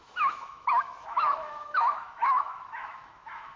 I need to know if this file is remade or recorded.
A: remade